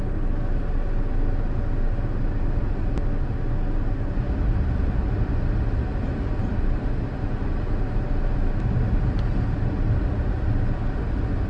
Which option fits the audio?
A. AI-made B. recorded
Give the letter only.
B